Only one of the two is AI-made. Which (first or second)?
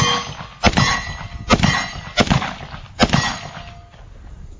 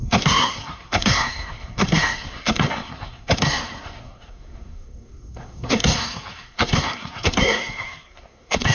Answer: second